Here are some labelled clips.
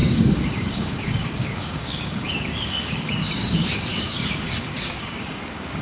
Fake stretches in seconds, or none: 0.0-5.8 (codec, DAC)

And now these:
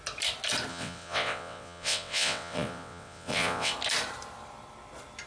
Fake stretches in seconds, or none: 0.7-3.7 (vocoder, WaveNeXt)

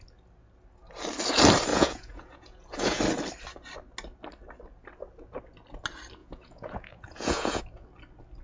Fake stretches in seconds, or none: 1.7-3.0 (vocoder, Vocos); 6.2-7.6

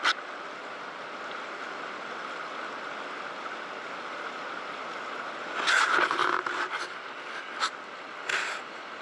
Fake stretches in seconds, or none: none